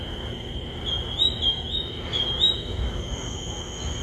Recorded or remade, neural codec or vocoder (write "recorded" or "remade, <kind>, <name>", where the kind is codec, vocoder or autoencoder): recorded